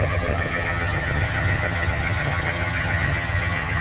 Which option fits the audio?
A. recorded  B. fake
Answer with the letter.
B